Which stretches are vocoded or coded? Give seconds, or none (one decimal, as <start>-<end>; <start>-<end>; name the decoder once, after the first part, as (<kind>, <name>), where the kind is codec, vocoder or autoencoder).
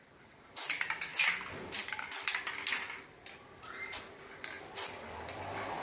none